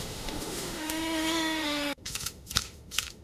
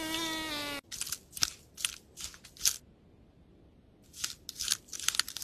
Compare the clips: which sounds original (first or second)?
second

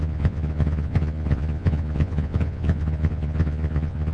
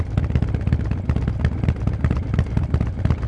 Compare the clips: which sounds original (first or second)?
second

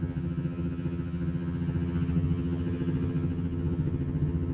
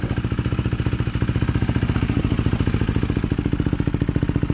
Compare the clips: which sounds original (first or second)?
second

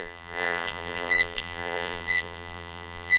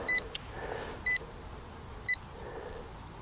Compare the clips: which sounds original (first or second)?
second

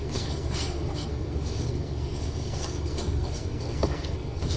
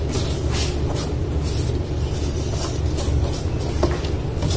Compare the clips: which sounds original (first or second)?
second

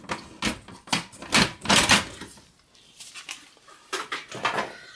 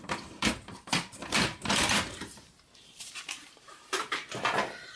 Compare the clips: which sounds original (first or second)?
first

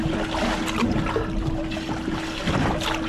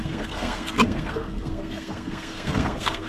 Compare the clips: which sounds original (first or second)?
first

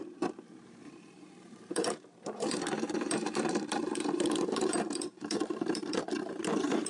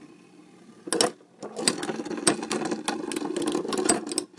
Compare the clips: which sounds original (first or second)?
second